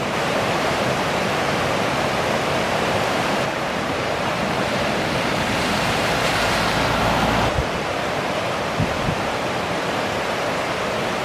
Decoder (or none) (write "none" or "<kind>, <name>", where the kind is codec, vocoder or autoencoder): vocoder, BigVGAN v2